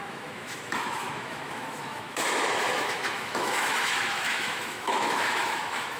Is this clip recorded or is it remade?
remade